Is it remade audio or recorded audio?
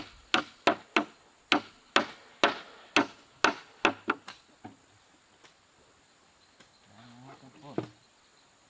recorded